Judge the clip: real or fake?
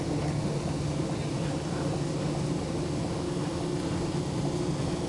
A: real